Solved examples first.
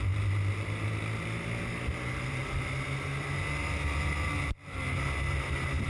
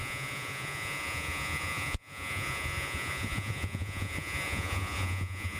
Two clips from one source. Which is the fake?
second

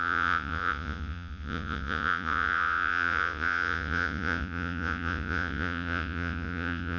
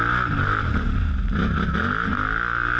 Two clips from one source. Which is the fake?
first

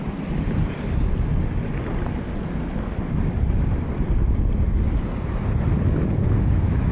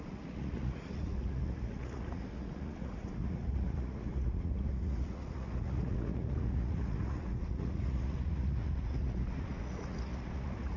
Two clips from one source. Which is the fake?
second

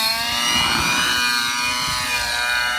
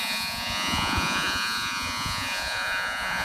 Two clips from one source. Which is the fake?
second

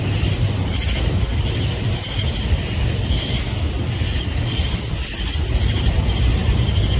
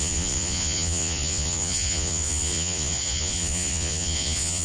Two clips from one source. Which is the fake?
second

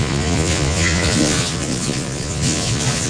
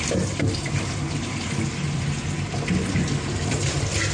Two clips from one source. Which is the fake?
first